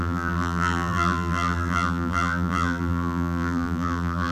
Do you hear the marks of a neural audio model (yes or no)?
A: yes